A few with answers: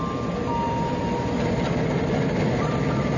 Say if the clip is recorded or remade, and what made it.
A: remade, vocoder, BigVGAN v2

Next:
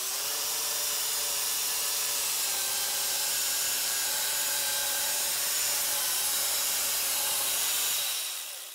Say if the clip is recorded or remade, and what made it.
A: remade, vocoder, BigVGAN v2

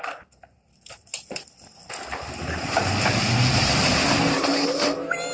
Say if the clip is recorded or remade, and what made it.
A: recorded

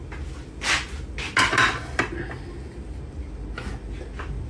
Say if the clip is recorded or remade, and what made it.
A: recorded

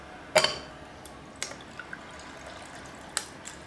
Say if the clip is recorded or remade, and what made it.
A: recorded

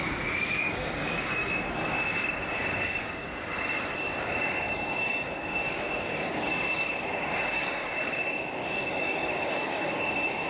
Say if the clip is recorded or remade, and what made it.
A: remade, codec, DAC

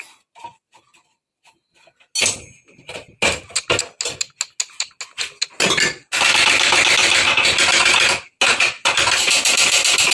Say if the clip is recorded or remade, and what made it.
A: recorded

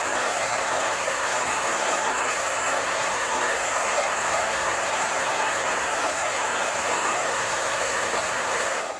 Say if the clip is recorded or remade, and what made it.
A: remade, codec, SNAC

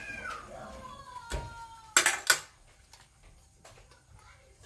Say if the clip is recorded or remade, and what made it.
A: recorded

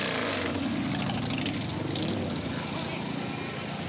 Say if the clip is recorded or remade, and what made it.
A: recorded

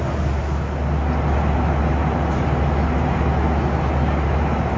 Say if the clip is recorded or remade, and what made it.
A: recorded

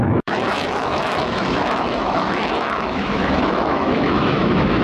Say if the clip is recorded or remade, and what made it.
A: remade, autoencoder, DAC-VAE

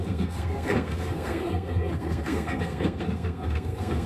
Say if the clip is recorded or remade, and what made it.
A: remade, codec, SNAC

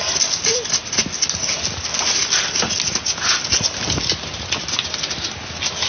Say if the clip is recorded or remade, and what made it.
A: recorded